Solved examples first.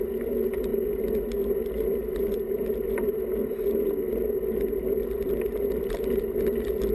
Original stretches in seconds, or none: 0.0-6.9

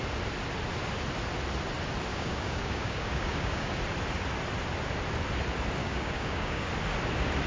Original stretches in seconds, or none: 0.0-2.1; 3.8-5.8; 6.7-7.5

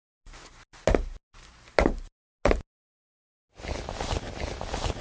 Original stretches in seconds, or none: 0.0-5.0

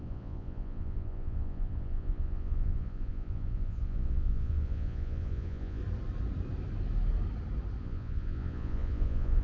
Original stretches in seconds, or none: 5.8-7.8

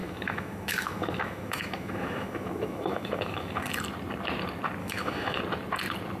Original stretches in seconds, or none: 3.7-4.8; 5.4-6.2

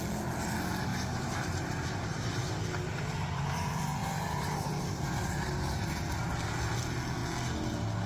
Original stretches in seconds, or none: 0.0-0.9; 2.5-4.0; 4.9-8.1

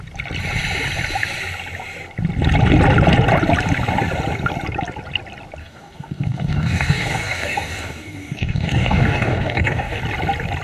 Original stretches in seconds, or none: 0.0-5.6; 10.0-10.6